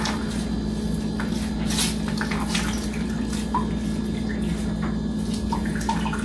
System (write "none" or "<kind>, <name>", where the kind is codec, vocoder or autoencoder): none